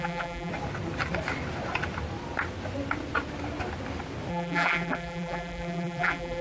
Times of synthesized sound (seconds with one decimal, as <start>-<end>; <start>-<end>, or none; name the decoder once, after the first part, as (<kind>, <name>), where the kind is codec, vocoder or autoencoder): 0.0-0.5 (vocoder, BigVGAN v2); 4.3-6.4